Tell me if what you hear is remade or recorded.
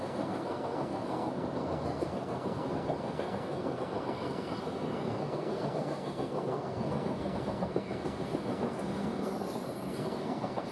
remade